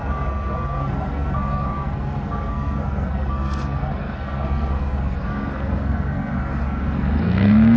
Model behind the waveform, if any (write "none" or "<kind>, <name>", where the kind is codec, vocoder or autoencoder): codec, SNAC